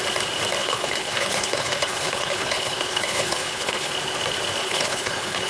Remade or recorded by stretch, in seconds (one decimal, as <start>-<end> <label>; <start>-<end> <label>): 0.0-0.6 recorded; 0.6-3.9 remade; 3.9-4.6 recorded; 4.6-5.5 remade